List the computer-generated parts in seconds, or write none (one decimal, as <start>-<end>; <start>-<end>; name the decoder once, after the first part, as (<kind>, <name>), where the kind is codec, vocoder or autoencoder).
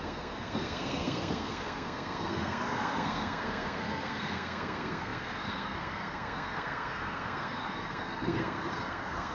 0.0-9.3 (codec, SNAC)